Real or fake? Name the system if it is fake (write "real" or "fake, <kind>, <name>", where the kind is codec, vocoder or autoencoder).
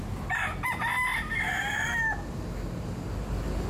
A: real